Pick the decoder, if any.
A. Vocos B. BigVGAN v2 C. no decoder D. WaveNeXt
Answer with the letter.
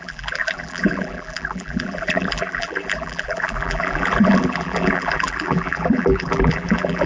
B